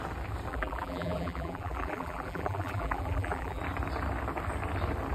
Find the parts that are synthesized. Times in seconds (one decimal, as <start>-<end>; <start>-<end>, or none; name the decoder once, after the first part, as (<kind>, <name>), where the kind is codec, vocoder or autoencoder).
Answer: 0.5-3.6 (vocoder, BigVGAN v2)